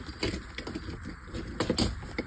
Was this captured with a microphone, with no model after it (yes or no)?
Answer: yes